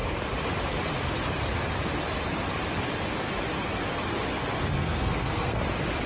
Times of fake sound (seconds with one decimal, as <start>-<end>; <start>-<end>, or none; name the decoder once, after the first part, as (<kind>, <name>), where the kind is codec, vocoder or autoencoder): 4.8-5.6 (codec, SNAC)